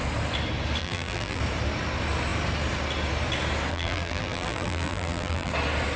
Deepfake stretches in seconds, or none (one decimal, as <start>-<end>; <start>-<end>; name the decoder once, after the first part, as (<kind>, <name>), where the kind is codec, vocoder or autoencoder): 0.8-1.4 (vocoder, BigVGAN v2); 3.7-5.5